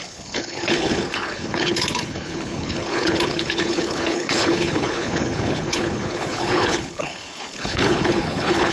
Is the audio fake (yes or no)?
yes